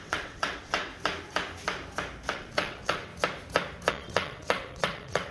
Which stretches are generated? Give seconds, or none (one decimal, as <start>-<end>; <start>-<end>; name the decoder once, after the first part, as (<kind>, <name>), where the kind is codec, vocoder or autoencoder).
0.0-0.9 (vocoder, WaveNeXt); 2.3-3.1; 3.9-5.3